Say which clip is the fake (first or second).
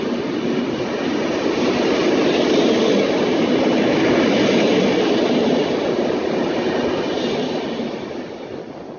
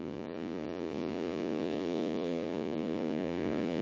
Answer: second